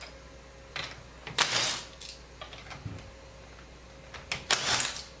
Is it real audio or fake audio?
real